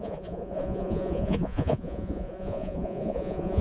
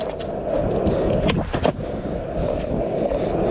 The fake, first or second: first